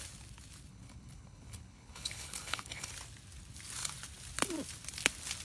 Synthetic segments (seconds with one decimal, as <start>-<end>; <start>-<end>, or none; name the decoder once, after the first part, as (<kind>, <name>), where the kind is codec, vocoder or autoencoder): 0.7-2.9 (codec, HILCodec)